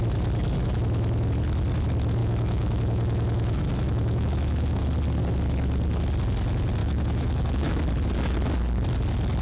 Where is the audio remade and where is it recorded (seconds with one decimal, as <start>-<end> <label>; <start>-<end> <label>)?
0.0-2.2 recorded; 2.2-4.8 remade; 4.8-6.8 recorded; 6.8-7.8 remade; 7.8-9.4 recorded